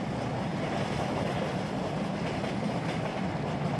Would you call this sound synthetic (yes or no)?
no